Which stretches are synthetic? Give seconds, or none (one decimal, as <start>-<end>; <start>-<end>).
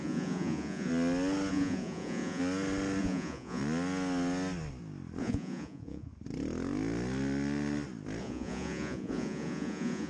0.0-0.9; 1.5-2.4; 3.0-3.6; 5.2-6.1; 8.2-10.1